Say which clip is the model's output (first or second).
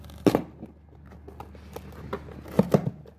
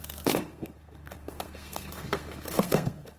second